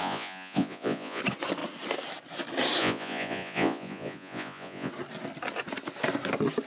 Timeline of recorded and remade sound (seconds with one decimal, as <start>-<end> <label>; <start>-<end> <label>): 0.0-1.2 remade; 1.2-2.8 recorded; 2.8-4.9 remade; 4.9-6.7 recorded